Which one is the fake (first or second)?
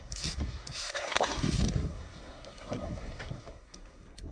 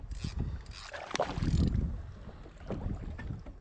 first